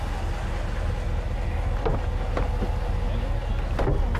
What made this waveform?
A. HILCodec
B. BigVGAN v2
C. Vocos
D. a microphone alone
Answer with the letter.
D